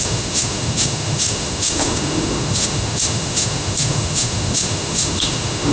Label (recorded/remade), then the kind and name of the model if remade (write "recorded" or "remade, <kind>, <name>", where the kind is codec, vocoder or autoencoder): remade, autoencoder, DAC-VAE